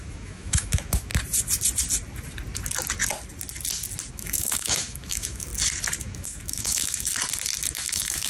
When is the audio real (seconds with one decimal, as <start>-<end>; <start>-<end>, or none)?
1.1-4.1; 5.5-6.0; 7.1-7.6